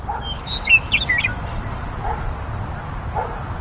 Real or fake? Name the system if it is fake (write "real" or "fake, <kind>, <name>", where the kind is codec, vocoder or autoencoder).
real